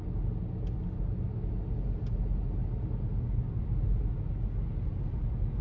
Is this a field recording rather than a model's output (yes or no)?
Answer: yes